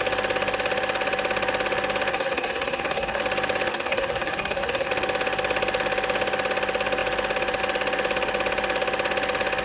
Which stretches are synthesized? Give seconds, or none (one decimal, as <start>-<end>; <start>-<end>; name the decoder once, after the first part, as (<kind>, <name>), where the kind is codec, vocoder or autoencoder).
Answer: 2.1-3.2 (codec, SNAC); 3.7-4.9